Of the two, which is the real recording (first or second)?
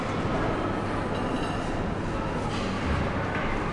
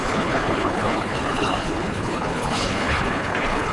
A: first